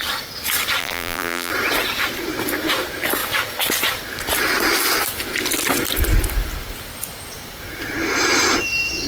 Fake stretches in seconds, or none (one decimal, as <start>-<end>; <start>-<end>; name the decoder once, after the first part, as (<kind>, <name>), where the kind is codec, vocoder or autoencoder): 0.8-1.5 (vocoder, BigVGAN v2)